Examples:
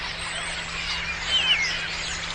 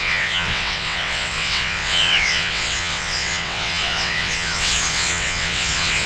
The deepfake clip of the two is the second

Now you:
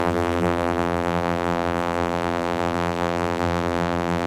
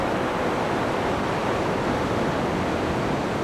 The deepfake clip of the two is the first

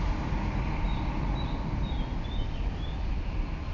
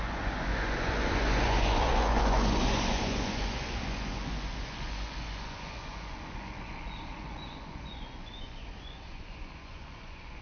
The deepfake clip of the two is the second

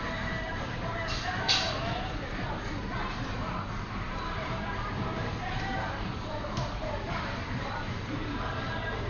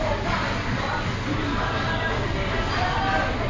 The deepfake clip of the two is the first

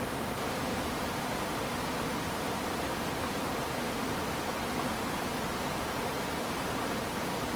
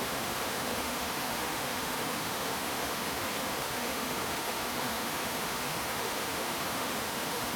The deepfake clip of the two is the second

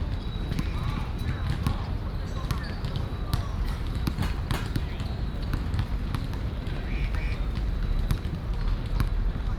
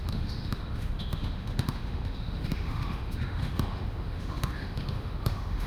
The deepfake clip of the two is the second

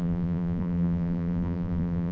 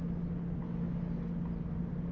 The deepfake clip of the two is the first